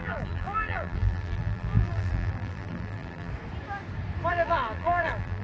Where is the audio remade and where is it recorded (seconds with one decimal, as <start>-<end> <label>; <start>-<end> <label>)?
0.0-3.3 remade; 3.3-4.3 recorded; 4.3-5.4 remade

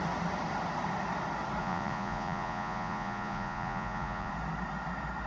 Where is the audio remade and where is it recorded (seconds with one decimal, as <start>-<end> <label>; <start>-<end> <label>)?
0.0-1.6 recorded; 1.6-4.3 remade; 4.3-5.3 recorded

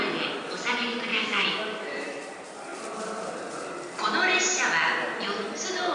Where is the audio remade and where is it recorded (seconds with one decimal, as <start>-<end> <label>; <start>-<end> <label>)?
0.0-1.1 recorded; 1.1-2.2 remade; 2.2-5.9 recorded

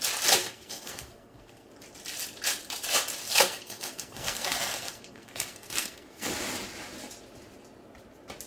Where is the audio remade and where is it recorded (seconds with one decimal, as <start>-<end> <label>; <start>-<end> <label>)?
0.0-0.4 recorded; 0.4-1.7 remade; 1.7-3.3 recorded; 3.3-6.3 remade; 6.3-8.5 recorded

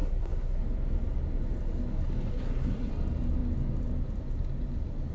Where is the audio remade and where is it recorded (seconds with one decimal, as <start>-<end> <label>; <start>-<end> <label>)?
0.0-0.6 remade; 0.6-2.3 recorded; 2.3-2.9 remade; 2.9-5.1 recorded

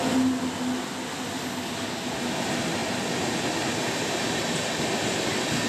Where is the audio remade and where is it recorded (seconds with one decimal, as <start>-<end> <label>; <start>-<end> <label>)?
0.0-5.7 recorded

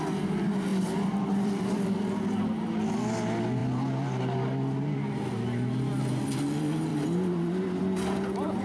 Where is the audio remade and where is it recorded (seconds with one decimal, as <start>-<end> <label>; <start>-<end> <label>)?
0.0-0.7 recorded; 0.7-2.0 remade; 2.0-6.9 recorded; 6.9-7.8 remade; 7.8-8.6 recorded